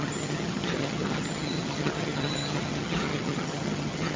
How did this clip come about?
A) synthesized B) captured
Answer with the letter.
A